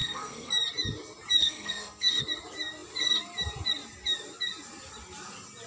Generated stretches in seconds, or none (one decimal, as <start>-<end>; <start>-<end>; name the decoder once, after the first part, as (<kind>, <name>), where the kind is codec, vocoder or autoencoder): 0.0-0.5 (codec, SNAC); 1.4-2.2